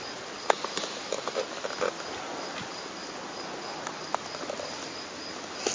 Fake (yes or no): no